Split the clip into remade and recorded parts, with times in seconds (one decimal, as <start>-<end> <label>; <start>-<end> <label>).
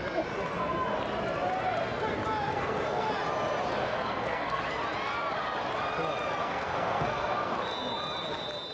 0.0-2.5 recorded; 2.5-3.1 remade; 3.1-3.8 recorded; 3.8-4.6 remade; 4.6-6.4 recorded; 6.4-7.6 remade; 7.6-8.7 recorded